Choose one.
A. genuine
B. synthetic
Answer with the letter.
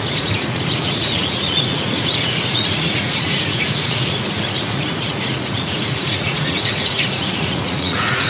B